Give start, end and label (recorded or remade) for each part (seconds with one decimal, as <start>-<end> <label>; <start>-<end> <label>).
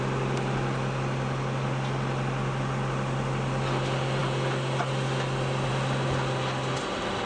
0.0-7.3 recorded